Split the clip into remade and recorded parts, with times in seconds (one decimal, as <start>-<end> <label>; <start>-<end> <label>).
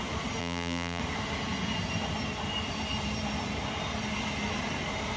0.0-0.4 recorded; 0.4-1.0 remade; 1.0-5.2 recorded